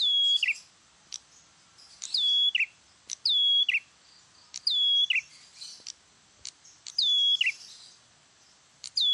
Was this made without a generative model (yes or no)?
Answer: yes